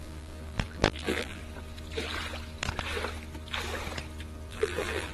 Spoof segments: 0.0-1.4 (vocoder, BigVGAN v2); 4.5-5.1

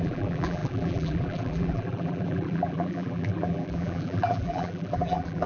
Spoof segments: 0.0-5.5 (vocoder, BigVGAN v2)

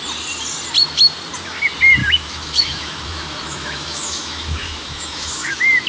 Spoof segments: 2.0-5.5 (autoencoder, DAC-VAE)

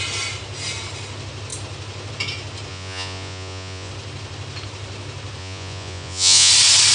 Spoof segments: 2.7-3.9 (vocoder, Vocos); 5.4-6.5

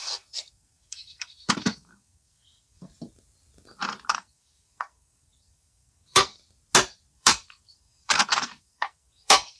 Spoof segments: 0.0-2.9 (codec, SNAC); 4.1-6.4; 7.1-9.6

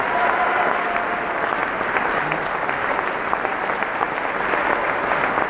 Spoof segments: none

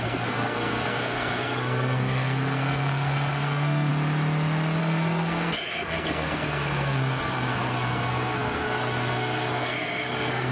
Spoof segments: 0.0-3.9 (codec, SNAC); 4.8-10.5

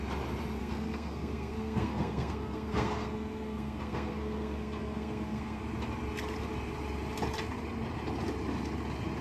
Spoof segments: 0.6-5.6 (codec, SNAC)